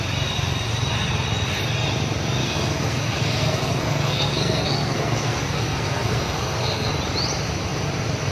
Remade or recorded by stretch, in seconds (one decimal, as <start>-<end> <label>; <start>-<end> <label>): 0.0-2.4 recorded; 2.4-6.9 remade; 6.9-8.3 recorded

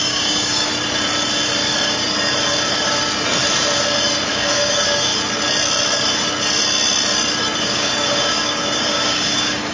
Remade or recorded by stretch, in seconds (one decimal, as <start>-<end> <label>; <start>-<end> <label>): 0.0-0.7 remade; 0.7-4.3 recorded; 4.3-5.1 remade; 5.1-7.6 recorded; 7.6-9.7 remade

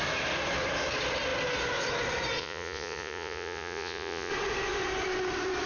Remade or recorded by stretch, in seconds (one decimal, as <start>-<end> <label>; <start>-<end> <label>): 0.0-2.4 recorded; 2.4-4.3 remade; 4.3-5.7 recorded

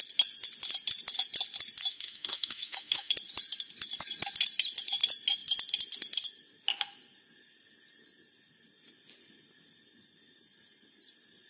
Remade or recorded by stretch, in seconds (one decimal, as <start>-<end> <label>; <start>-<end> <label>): 0.0-1.9 recorded; 1.9-3.1 remade; 3.1-11.5 recorded

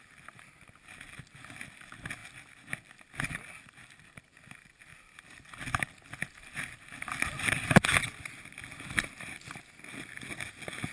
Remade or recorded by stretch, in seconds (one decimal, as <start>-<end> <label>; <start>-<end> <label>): 0.0-10.9 recorded

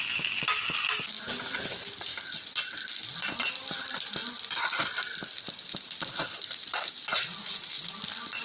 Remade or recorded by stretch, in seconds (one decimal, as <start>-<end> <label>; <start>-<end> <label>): 0.0-8.4 recorded